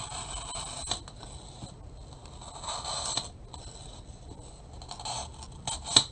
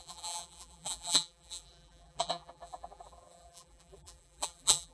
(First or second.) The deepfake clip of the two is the second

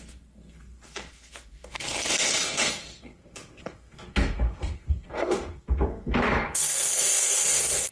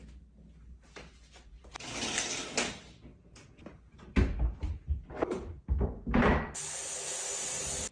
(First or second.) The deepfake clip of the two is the first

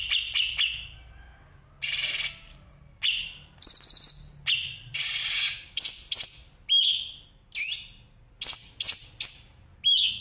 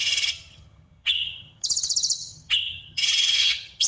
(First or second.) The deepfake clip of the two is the second